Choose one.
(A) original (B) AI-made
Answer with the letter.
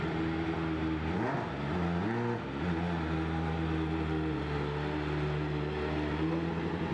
A